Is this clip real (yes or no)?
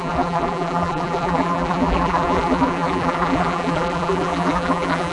no